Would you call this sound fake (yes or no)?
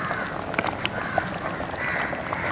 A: no